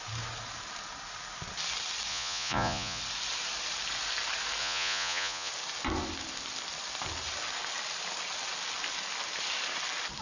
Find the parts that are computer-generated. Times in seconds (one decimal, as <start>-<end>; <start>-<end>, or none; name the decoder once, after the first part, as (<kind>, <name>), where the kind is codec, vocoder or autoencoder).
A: 2.1-3.0 (vocoder, Vocos); 4.6-5.5